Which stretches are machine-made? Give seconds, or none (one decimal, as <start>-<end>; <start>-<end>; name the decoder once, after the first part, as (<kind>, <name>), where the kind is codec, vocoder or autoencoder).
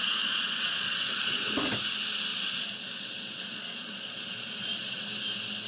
0.0-1.4 (vocoder, Vocos); 2.3-5.0